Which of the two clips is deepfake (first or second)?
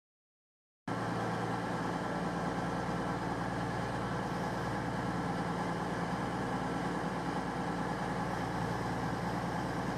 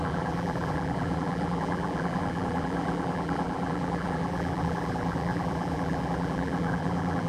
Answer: second